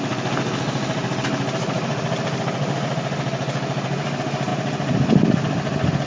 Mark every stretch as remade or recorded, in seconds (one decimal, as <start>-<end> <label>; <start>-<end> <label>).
0.0-6.1 recorded